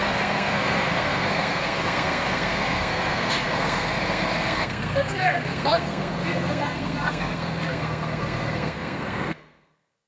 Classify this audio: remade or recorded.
remade